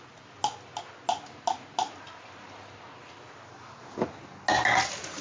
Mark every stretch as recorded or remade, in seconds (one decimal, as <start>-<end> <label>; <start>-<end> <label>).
0.0-5.2 recorded